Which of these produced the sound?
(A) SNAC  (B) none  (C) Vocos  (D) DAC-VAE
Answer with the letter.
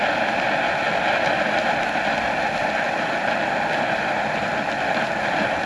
B